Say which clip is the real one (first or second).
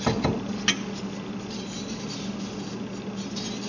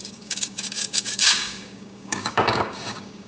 first